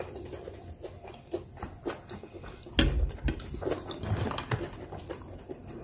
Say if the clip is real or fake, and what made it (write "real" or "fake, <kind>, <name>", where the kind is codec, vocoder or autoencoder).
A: real